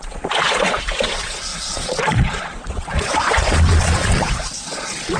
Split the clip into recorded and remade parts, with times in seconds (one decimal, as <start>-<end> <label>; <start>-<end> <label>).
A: 0.0-5.2 remade